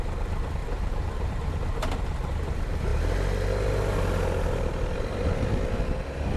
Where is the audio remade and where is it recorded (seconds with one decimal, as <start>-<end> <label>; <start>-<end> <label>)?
0.0-0.6 recorded; 0.6-1.6 remade; 1.6-6.4 recorded